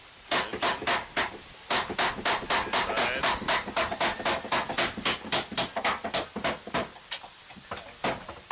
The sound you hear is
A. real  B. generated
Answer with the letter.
A